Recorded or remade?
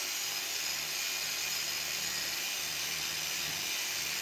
recorded